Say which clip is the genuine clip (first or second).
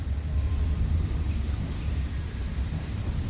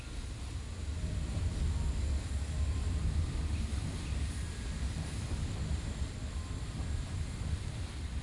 first